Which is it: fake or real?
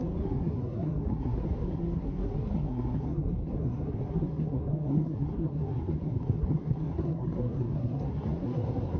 fake